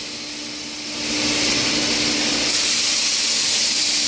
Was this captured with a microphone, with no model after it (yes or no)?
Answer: yes